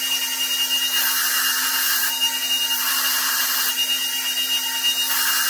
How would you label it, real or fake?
real